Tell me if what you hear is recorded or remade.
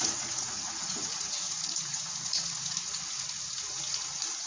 remade